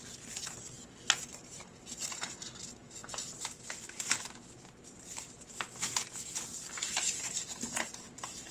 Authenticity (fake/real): real